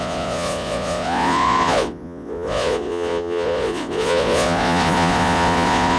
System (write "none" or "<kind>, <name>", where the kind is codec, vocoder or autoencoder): vocoder, Vocos